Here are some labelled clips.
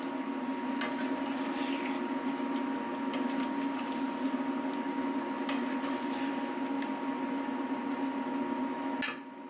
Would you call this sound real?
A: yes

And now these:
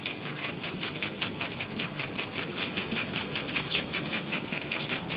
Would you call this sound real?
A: no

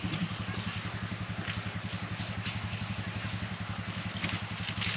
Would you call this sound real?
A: yes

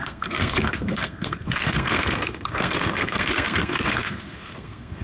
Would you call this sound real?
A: no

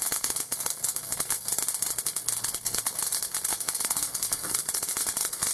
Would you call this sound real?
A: no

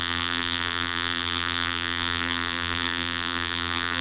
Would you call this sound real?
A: no